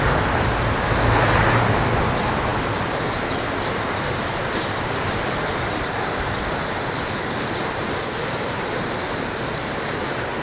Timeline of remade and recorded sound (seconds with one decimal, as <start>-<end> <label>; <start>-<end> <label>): 0.0-10.4 recorded